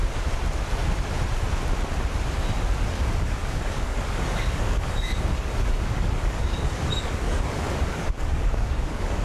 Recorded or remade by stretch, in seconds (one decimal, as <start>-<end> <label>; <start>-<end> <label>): 0.0-2.9 recorded; 2.9-9.2 remade